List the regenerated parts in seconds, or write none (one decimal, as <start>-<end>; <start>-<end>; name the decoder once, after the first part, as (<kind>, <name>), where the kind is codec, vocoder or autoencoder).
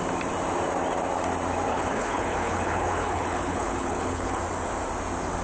1.7-4.4 (codec, HILCodec)